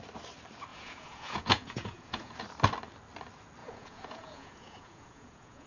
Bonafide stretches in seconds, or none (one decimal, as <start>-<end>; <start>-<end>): 0.0-0.7; 2.4-3.6